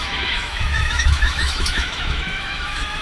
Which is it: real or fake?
fake